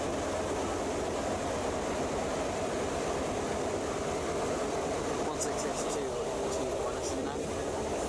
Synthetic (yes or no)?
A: no